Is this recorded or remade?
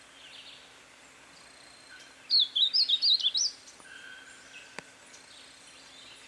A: recorded